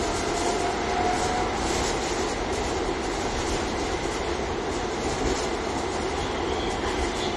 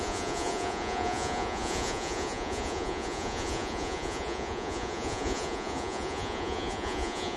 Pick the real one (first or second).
first